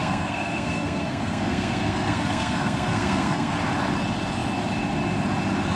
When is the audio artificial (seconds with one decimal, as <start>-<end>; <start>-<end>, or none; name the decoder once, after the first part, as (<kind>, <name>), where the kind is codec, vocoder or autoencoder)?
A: 0.0-3.5 (codec, SNAC)